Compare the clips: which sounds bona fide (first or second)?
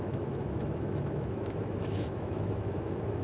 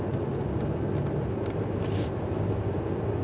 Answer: second